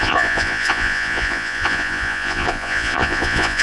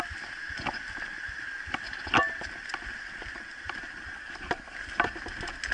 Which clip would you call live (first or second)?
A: second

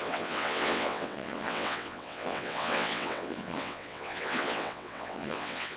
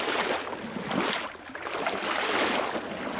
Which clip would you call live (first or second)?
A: second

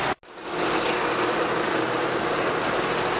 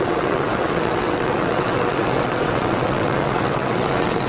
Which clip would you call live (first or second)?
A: first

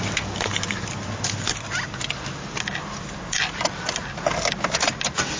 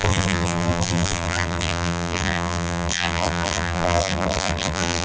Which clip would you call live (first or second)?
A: first